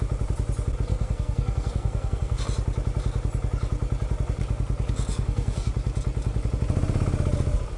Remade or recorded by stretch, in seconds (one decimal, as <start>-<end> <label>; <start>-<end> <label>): 0.0-0.9 recorded; 0.9-2.4 remade; 2.4-5.1 recorded; 5.1-5.7 remade; 5.7-7.8 recorded